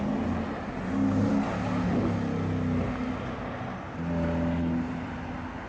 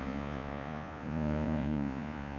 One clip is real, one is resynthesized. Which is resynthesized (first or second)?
second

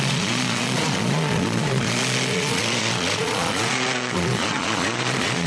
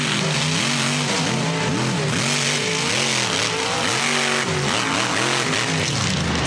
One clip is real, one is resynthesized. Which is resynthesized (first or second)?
first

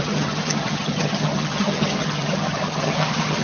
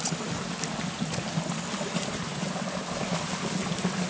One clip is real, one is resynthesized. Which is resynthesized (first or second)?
first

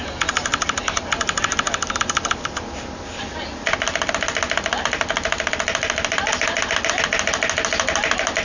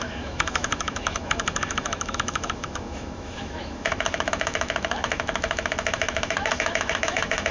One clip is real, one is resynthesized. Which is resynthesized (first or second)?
second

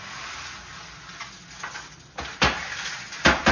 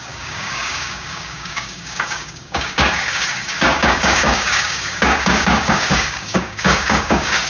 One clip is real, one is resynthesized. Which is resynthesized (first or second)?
second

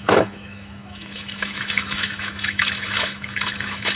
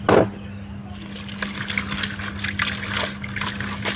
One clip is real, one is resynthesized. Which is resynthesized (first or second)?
first